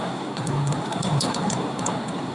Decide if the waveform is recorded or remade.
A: remade